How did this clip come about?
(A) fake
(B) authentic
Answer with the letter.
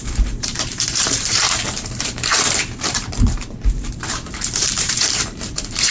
A